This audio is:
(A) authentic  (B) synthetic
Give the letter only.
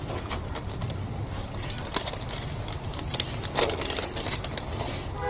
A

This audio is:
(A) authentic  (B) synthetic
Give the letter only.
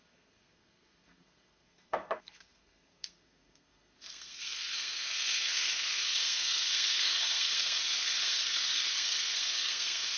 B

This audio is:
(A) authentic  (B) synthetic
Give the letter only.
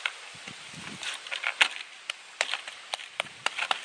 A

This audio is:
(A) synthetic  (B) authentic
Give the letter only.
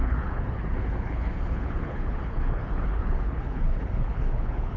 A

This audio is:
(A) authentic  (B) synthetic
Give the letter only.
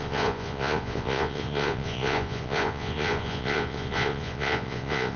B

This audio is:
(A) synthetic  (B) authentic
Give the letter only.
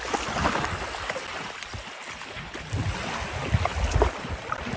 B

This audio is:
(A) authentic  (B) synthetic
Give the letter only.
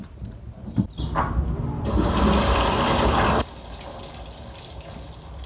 A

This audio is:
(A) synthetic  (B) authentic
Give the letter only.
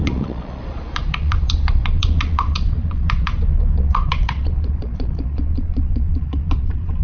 A